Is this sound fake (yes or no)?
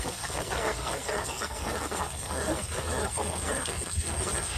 yes